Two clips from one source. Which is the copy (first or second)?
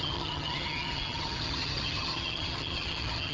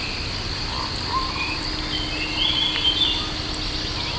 first